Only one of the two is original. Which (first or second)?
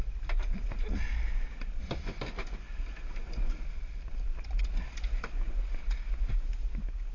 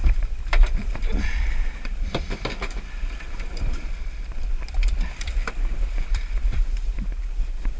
first